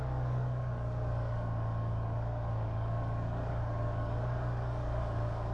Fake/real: fake